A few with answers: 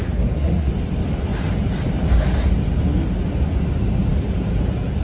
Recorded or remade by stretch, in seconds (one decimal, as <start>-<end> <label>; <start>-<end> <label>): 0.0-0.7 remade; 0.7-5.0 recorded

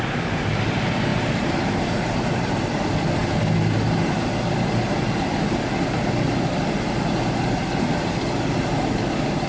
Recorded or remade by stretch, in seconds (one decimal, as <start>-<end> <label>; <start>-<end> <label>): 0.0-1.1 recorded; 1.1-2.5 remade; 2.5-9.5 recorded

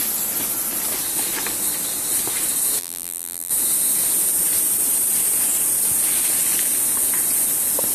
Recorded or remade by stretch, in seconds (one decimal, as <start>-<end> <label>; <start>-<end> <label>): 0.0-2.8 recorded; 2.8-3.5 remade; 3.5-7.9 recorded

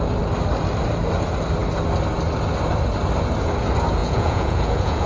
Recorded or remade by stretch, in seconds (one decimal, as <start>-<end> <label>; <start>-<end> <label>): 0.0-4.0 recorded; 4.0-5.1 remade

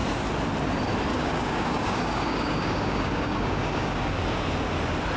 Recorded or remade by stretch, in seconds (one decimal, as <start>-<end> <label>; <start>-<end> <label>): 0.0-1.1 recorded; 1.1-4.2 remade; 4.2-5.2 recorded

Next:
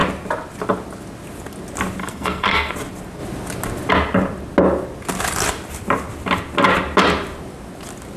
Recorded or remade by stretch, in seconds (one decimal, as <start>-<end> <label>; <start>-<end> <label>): 0.0-2.0 recorded; 2.0-2.7 remade; 2.7-8.2 recorded

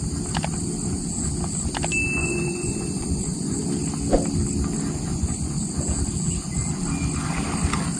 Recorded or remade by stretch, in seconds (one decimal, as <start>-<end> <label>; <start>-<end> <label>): 0.0-2.2 recorded; 2.2-3.6 remade; 3.6-5.1 recorded; 5.1-5.7 remade; 5.7-8.0 recorded

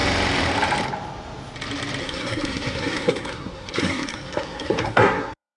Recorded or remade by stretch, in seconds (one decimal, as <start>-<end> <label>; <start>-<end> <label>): 0.0-2.0 recorded; 2.0-5.6 remade